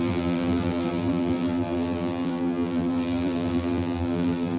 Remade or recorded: remade